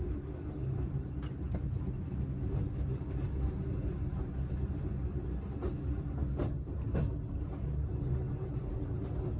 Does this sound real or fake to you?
real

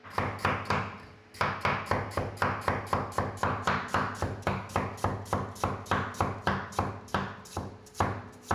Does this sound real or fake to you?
real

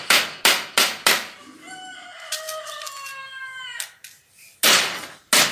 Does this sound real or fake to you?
real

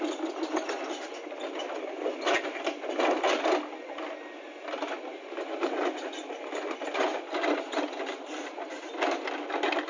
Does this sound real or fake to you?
real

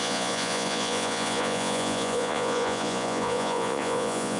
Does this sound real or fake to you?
fake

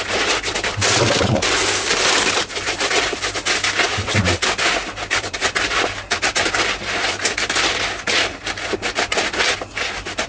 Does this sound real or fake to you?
real